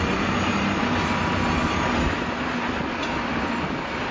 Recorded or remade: recorded